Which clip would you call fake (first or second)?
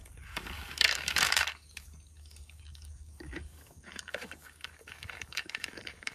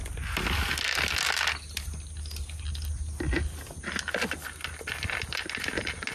first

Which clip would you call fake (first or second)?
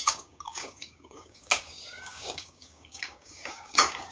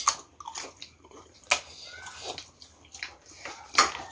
first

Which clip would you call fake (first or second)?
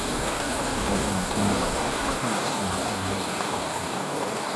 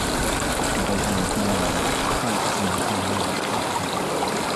first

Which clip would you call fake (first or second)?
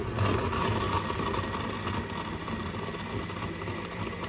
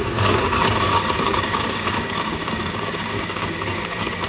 second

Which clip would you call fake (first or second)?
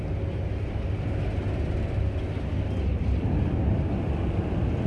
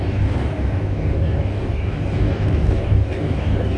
second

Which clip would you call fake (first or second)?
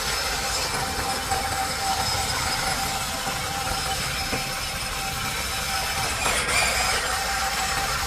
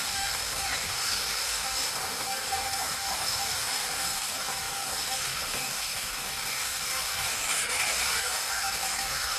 second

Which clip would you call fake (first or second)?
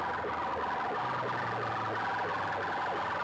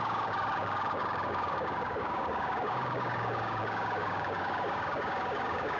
second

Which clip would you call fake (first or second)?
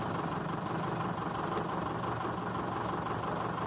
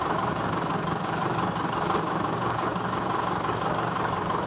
second